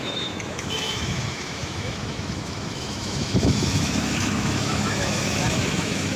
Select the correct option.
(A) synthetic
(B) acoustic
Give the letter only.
A